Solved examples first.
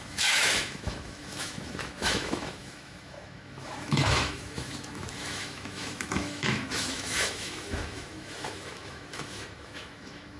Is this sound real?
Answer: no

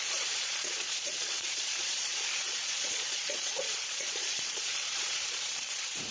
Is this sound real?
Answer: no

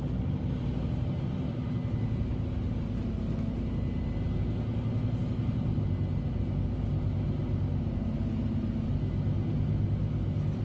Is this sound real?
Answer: yes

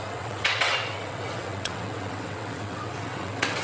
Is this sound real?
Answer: no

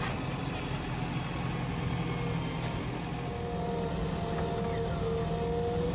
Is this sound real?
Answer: yes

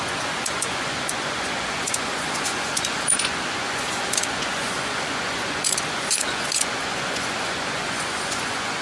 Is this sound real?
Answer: no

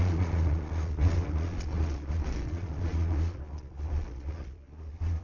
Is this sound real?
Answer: no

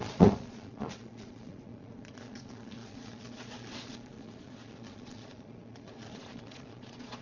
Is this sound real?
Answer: no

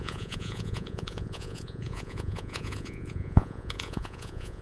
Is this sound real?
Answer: no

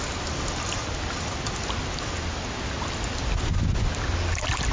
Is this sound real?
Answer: yes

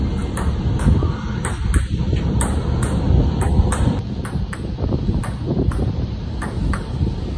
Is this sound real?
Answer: yes